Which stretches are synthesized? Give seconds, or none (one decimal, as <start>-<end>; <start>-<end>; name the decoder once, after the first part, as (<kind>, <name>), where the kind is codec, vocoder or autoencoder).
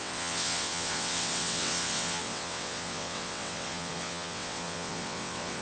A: 0.0-5.6 (vocoder, WaveNeXt)